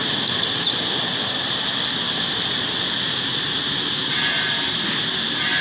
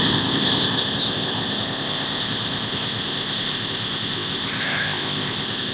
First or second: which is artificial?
second